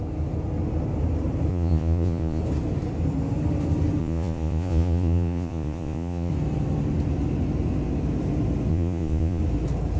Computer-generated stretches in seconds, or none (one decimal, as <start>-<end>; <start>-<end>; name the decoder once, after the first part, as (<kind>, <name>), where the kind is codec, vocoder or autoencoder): 1.5-2.4 (vocoder, Vocos); 4.0-6.3; 8.7-9.4

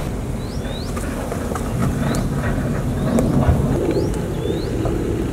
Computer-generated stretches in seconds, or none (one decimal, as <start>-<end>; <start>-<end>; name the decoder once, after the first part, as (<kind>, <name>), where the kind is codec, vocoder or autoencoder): none

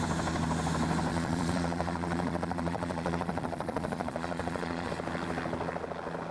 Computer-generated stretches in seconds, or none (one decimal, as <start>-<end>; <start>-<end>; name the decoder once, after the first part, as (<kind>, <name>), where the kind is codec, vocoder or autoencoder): 1.1-4.9 (vocoder, Vocos)

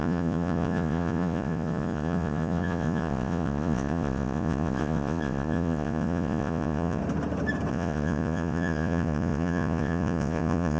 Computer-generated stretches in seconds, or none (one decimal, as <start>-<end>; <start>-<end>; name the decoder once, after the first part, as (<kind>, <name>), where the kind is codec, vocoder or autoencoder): 0.0-7.0 (vocoder, Vocos); 7.7-10.8

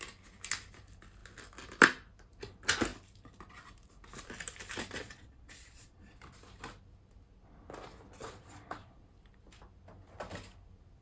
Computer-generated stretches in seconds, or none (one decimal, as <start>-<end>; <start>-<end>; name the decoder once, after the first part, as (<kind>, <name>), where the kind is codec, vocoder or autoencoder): 5.0-6.1 (vocoder, Vocos); 8.2-9.0

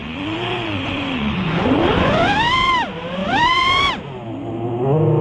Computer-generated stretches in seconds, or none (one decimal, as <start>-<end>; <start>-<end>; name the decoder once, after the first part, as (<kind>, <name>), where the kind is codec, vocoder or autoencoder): 0.0-2.3 (vocoder, Vocos); 3.2-3.8